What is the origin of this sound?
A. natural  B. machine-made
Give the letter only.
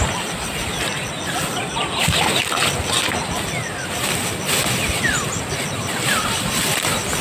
A